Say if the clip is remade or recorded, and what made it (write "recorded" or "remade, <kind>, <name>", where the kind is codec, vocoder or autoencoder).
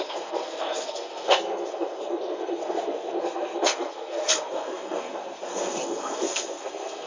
remade, codec, SNAC